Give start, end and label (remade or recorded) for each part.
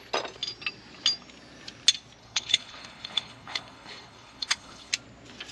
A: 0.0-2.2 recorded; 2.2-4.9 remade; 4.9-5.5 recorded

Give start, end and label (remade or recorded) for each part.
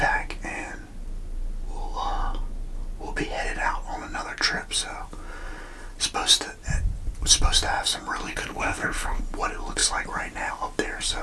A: 0.0-8.3 recorded; 8.3-9.2 remade; 9.2-11.2 recorded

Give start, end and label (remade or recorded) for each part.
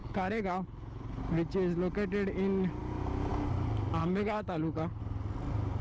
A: 0.0-1.2 remade; 1.2-4.0 recorded; 4.0-5.0 remade; 5.0-5.8 recorded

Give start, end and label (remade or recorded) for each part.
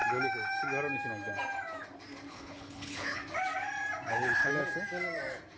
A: 0.0-2.3 recorded; 2.3-3.2 remade; 3.2-4.1 recorded; 4.1-4.5 remade; 4.5-5.6 recorded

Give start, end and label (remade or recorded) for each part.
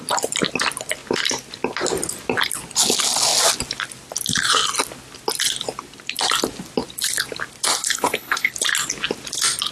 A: 0.0-7.8 recorded; 7.8-8.5 remade; 8.5-9.7 recorded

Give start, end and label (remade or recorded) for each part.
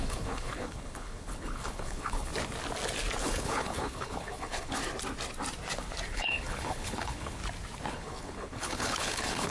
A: 0.0-2.3 remade; 2.3-3.2 recorded; 3.2-4.8 remade; 4.8-6.1 recorded; 6.1-7.4 remade; 7.4-7.9 recorded; 7.9-9.5 remade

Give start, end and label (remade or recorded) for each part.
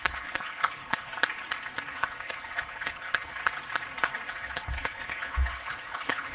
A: 0.0-1.1 remade; 1.1-1.9 recorded; 1.9-3.4 remade; 3.4-4.3 recorded; 4.3-6.3 remade